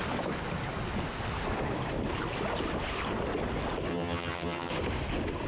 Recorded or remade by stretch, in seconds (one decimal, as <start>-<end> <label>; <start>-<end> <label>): 0.0-3.9 recorded; 3.9-4.7 remade; 4.7-5.5 recorded